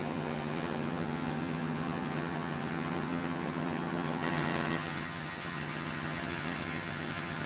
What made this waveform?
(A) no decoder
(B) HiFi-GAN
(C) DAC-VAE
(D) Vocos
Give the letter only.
B